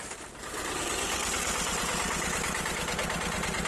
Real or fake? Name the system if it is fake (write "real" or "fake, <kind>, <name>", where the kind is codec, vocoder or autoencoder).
fake, vocoder, BigVGAN v2